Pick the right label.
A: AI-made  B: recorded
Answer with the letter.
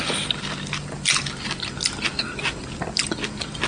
B